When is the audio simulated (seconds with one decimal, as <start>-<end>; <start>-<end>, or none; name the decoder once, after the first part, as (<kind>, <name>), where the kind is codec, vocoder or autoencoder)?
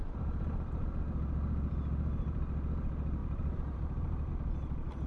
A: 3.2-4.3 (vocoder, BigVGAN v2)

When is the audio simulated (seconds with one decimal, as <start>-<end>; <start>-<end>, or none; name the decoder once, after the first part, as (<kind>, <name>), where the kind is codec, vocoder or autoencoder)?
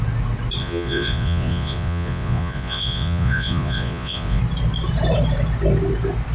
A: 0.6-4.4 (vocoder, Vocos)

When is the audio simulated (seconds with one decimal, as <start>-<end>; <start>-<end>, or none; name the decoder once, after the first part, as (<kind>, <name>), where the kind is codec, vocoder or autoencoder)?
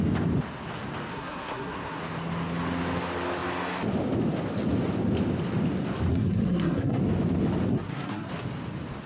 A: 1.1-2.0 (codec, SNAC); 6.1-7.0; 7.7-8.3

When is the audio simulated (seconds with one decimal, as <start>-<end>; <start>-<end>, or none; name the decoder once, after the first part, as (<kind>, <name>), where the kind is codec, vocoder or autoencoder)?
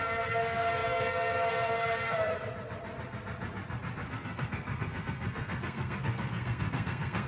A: 0.0-2.3 (codec, SNAC); 4.1-7.3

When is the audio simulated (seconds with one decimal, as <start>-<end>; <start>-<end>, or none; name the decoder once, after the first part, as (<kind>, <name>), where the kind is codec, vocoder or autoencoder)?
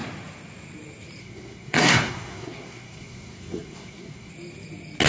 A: 1.2-4.3 (codec, SNAC)